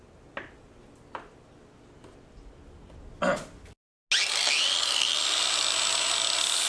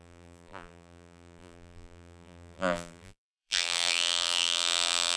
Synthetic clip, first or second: second